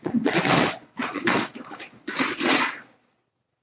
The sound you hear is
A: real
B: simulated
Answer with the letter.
B